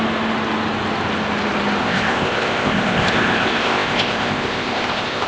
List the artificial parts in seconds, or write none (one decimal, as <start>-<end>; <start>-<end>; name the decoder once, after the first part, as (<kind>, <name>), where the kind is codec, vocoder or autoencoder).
1.8-5.3 (codec, ZipCodec)